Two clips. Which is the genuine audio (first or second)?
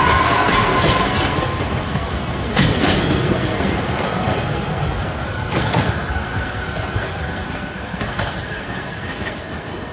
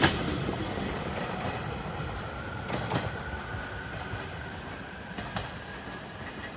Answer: second